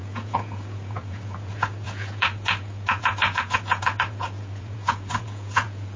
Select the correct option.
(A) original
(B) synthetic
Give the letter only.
B